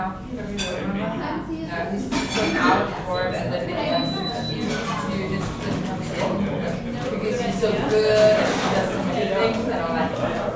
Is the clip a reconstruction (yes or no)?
no